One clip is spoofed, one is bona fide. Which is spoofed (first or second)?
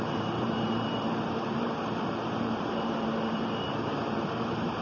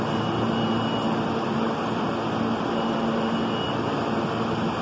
first